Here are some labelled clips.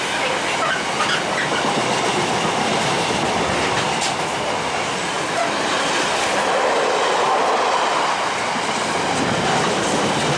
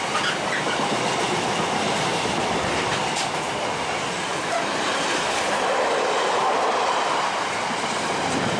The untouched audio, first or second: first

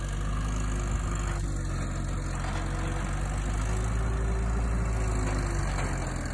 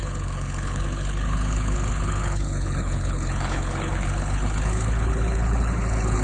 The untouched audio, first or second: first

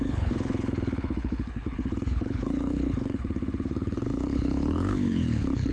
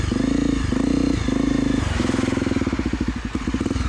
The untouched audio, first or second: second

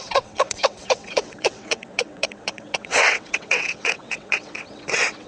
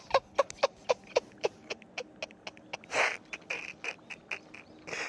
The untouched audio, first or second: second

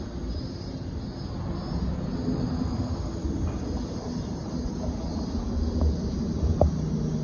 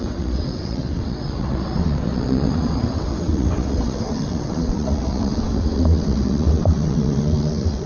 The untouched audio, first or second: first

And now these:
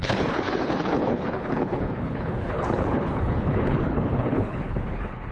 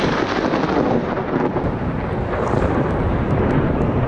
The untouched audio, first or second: second